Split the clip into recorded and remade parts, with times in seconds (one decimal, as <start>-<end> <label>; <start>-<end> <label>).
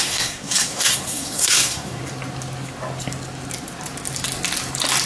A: 0.0-2.0 remade; 2.0-5.1 recorded